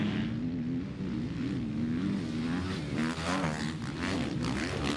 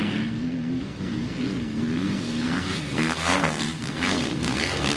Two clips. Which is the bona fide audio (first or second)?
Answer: first